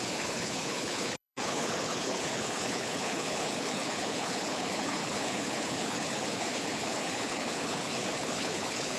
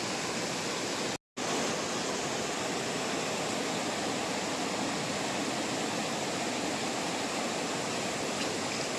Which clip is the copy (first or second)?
first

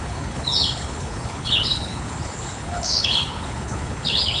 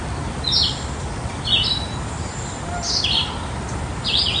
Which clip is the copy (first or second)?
first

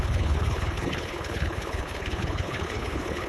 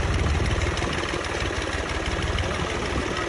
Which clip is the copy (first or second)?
first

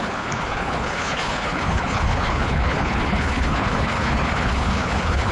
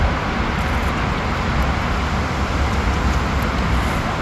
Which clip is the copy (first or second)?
first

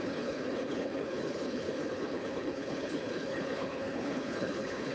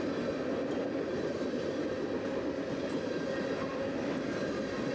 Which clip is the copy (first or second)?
first